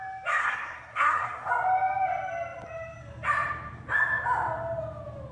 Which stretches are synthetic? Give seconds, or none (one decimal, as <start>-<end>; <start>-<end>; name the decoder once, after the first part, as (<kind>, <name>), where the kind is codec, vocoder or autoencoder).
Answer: 0.4-1.5 (codec, SNAC)